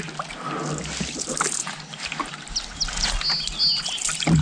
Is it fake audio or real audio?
real